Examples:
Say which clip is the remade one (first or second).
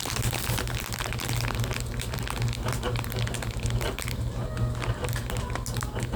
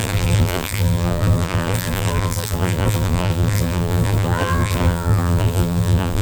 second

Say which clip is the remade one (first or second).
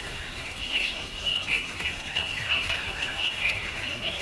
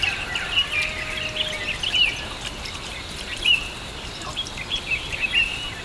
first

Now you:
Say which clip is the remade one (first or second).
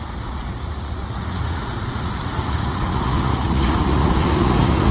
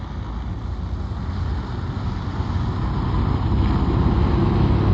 first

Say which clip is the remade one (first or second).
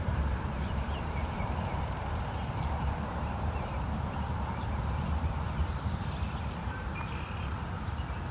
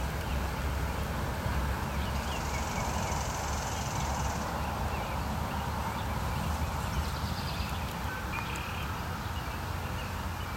first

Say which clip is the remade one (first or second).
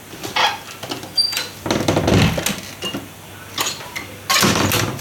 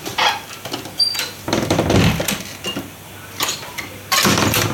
second